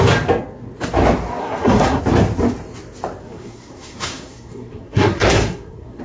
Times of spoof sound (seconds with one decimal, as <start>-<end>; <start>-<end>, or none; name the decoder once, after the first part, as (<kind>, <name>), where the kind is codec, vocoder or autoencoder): 1.4-2.0 (codec, SNAC); 3.2-6.0